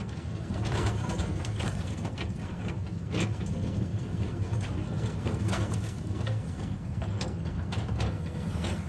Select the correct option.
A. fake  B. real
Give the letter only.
A